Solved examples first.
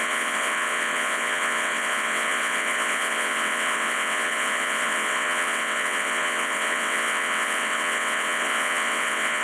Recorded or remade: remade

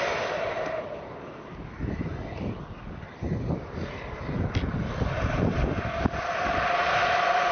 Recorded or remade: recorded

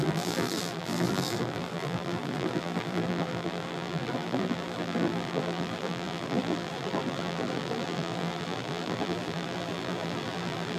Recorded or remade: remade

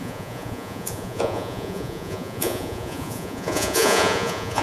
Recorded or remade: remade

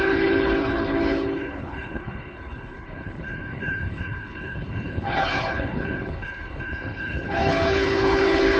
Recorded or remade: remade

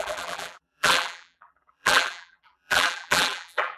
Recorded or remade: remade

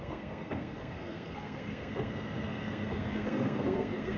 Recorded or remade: remade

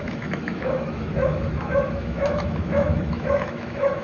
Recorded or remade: remade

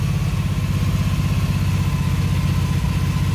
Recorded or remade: recorded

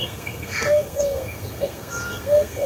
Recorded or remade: remade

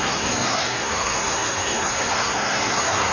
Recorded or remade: remade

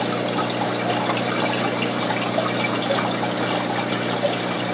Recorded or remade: recorded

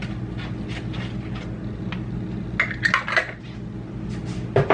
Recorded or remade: recorded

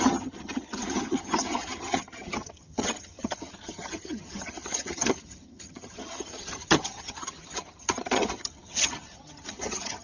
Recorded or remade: remade